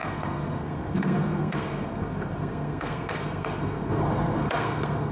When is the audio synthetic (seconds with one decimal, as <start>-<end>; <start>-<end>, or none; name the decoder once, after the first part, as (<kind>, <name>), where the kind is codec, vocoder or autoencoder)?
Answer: 0.0-5.1 (codec, SNAC)